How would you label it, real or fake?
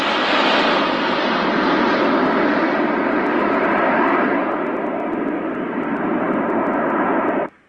real